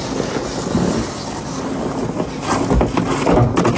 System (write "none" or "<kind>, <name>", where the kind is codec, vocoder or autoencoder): none